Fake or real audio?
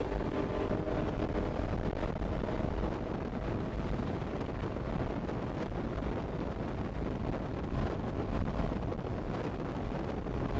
real